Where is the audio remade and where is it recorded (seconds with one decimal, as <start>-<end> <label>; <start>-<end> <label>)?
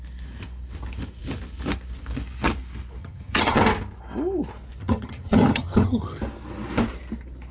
0.0-3.0 recorded; 3.0-3.6 remade; 3.6-4.8 recorded; 4.8-6.2 remade; 6.2-7.5 recorded